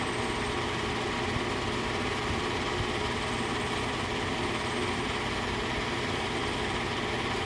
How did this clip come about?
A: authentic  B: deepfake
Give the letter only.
A